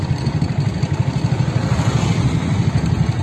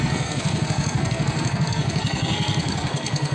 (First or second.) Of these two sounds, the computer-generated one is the second